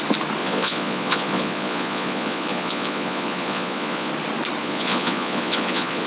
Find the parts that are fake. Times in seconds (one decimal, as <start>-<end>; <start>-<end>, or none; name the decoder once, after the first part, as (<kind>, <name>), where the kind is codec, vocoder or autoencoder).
0.4-4.1 (vocoder, Vocos); 4.6-6.1